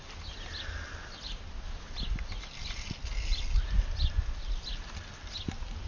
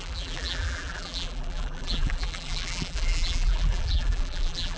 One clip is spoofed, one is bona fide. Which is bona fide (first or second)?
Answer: first